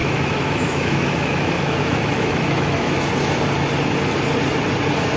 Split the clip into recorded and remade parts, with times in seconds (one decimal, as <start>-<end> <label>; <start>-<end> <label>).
0.0-3.1 remade; 3.1-5.2 recorded